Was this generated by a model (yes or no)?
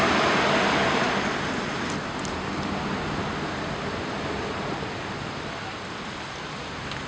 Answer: no